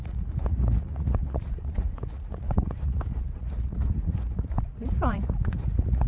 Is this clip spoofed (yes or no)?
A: yes